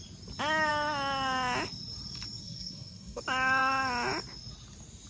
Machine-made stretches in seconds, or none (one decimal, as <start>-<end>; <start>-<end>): 2.4-3.2